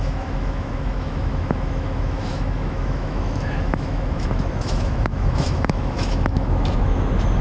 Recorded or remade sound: remade